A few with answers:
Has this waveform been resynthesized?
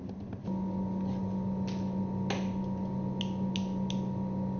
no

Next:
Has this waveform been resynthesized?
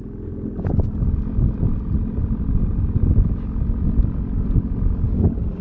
no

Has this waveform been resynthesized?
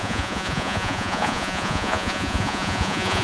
yes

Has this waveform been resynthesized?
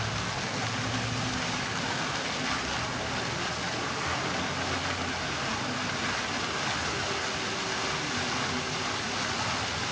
no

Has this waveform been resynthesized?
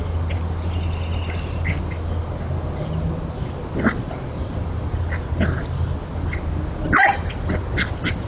no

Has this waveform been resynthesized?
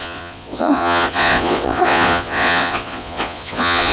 yes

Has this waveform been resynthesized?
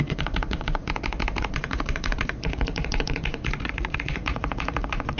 yes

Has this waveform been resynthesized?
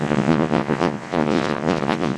yes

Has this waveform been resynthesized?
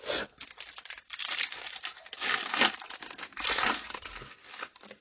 no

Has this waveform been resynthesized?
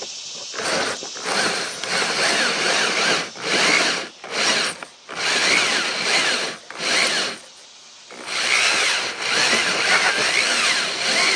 no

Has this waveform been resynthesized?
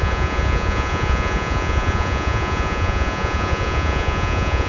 yes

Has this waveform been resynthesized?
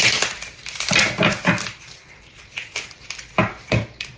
no